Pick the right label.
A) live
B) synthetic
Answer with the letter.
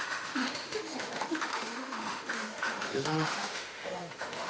B